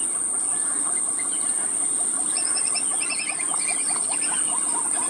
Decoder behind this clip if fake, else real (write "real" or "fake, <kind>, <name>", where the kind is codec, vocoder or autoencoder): real